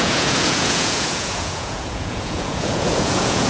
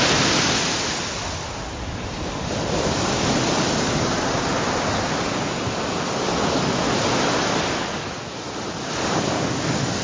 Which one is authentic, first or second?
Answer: second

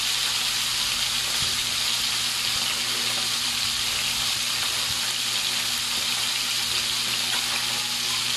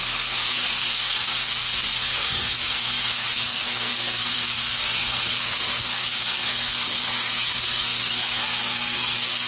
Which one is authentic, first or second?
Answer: first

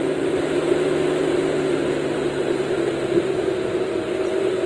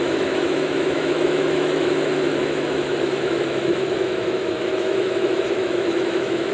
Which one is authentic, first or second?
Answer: first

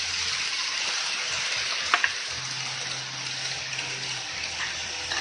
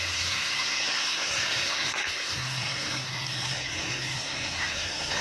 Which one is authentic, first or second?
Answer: first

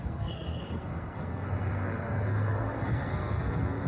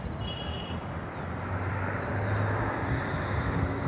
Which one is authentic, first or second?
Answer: second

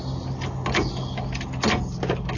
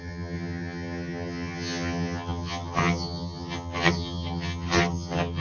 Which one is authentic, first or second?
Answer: first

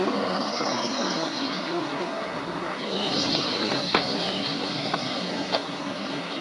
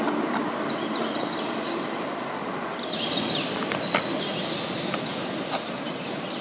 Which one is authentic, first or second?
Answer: second